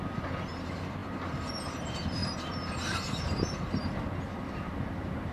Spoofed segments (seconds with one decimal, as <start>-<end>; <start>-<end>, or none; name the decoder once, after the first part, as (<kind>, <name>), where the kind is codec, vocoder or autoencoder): 0.0-5.3 (vocoder, BigVGAN v2)

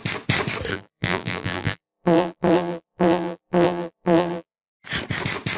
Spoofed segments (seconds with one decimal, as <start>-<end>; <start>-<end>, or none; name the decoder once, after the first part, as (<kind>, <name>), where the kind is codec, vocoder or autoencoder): 0.7-4.7 (vocoder, BigVGAN v2)

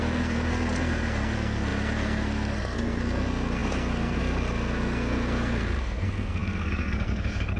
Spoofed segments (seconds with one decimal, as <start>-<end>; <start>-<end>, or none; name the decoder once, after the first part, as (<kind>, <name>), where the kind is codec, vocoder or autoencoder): 0.0-7.6 (codec, SNAC)

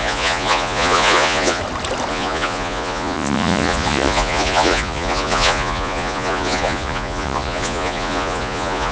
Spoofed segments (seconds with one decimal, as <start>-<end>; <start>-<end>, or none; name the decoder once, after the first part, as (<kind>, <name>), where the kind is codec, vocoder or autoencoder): 0.0-1.6 (vocoder, Vocos); 2.1-8.9

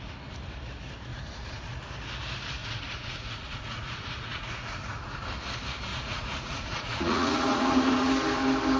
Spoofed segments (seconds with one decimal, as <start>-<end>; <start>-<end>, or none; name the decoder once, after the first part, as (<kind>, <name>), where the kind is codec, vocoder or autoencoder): 1.1-1.7 (vocoder, Vocos); 2.6-5.2; 5.9-8.1